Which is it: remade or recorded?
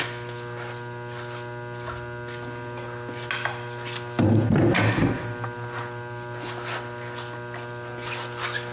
recorded